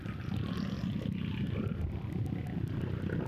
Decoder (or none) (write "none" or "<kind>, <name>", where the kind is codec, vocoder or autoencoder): none